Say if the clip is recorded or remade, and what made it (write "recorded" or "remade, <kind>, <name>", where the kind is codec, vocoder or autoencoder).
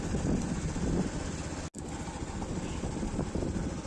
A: recorded